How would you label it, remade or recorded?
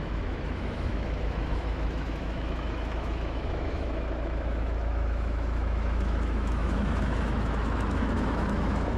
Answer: remade